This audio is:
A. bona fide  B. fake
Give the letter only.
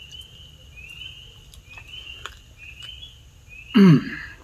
A